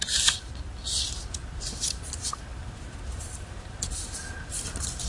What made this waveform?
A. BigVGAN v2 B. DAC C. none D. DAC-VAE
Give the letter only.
C